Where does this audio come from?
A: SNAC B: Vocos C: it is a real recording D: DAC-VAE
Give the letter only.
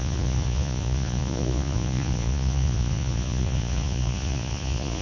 B